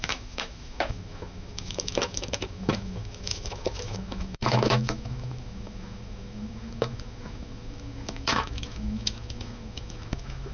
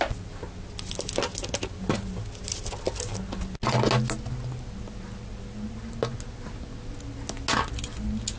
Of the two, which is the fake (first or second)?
first